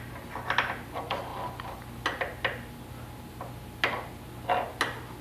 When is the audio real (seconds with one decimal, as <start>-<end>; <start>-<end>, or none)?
0.0-5.2